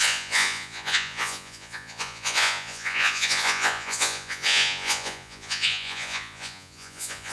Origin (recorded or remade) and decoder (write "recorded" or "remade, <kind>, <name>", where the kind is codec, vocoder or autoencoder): remade, vocoder, Vocos